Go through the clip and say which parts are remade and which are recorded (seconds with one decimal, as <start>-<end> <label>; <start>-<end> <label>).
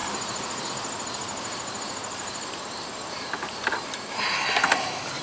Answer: 0.0-0.7 remade; 0.7-1.3 recorded; 1.3-4.4 remade; 4.4-5.2 recorded